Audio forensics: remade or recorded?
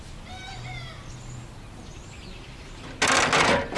recorded